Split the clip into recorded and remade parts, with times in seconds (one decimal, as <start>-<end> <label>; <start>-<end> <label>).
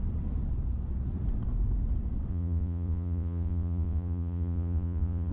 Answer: 0.0-2.3 recorded; 2.3-5.3 remade